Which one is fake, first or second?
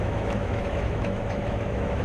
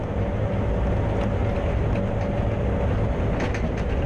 first